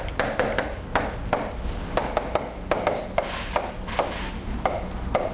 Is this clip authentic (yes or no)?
yes